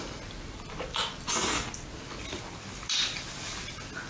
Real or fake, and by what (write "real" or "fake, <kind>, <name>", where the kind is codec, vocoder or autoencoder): real